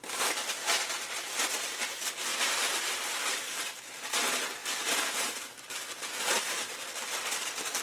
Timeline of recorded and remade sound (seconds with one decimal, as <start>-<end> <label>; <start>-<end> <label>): 0.0-2.3 recorded; 2.3-2.9 remade; 2.9-4.6 recorded; 4.6-6.6 remade; 6.6-7.8 recorded